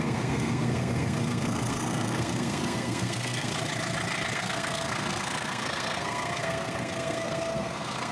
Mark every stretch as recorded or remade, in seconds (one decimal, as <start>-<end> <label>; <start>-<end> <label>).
0.0-3.5 remade; 3.5-4.3 recorded; 4.3-8.1 remade